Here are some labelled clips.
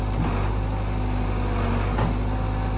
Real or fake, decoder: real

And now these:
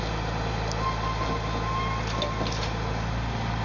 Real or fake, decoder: real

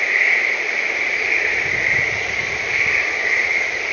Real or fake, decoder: real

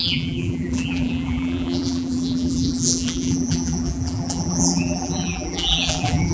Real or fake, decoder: fake, vocoder, BigVGAN v2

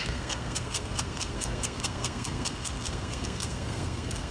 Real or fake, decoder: fake, codec, SNAC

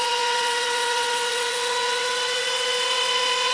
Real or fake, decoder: fake, vocoder, WaveNeXt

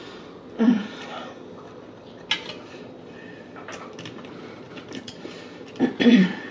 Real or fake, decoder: real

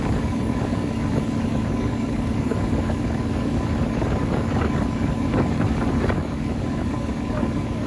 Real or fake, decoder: fake, codec, DAC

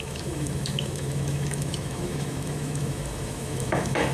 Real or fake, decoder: fake, autoencoder, DAC-VAE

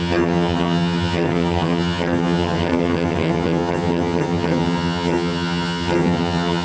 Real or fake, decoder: fake, vocoder, HiFi-GAN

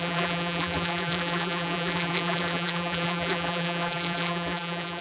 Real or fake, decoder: fake, vocoder, BigVGAN v2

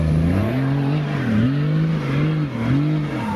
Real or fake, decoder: real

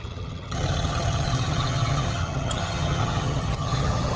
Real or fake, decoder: fake, vocoder, HiFi-GAN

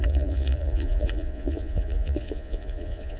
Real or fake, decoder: fake, vocoder, Vocos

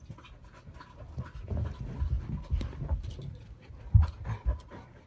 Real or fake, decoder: real